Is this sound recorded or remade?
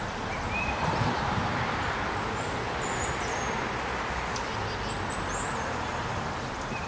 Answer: recorded